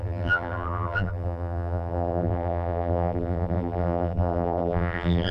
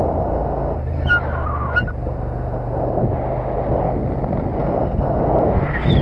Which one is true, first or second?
second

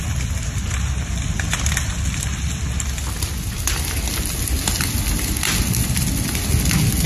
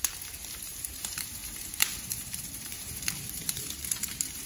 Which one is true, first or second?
first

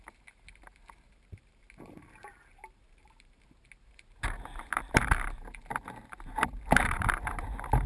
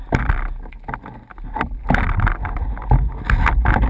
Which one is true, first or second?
second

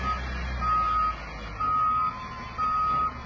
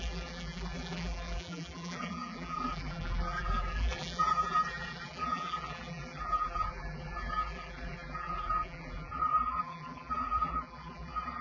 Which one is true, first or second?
first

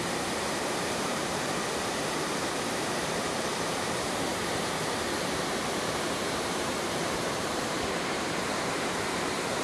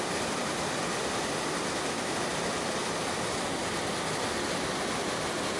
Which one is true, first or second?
second